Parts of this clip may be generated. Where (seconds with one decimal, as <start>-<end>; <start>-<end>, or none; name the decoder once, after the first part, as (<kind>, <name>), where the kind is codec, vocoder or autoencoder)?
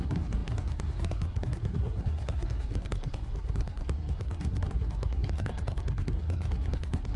0.0-7.2 (codec, SNAC)